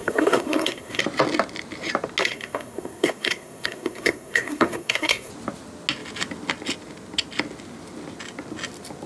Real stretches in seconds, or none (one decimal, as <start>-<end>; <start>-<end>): 1.0-2.2; 5.3-9.1